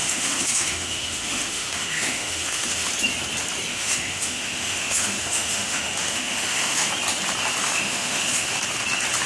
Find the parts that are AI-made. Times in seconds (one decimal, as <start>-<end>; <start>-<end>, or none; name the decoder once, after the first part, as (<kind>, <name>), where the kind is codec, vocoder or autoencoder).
0.0-2.9 (autoencoder, DAC-VAE); 3.7-6.9; 7.6-8.6